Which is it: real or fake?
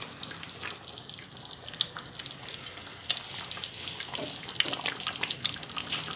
real